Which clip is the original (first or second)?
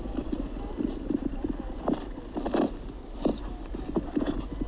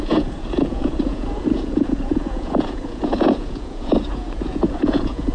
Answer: first